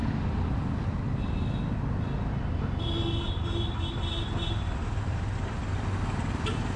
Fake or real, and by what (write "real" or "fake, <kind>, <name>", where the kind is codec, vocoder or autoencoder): real